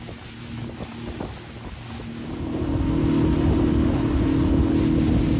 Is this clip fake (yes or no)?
no